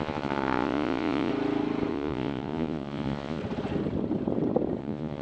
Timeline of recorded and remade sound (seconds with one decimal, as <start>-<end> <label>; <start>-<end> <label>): 0.0-1.3 remade; 1.3-1.9 recorded; 1.9-3.4 remade; 3.4-4.8 recorded; 4.8-5.2 remade